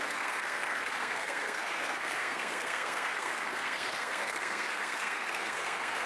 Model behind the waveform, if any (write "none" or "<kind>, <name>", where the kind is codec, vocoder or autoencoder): codec, SNAC